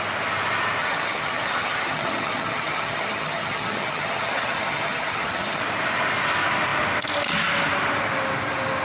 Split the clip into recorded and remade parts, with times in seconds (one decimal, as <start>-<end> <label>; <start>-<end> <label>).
0.0-0.8 recorded; 0.8-5.6 remade; 5.6-8.8 recorded